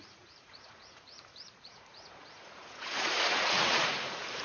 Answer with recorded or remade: remade